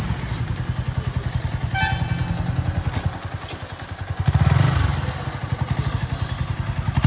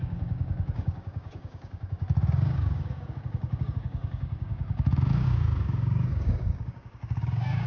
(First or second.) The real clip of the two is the first